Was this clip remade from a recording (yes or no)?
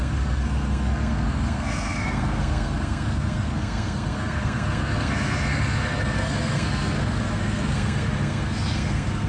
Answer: yes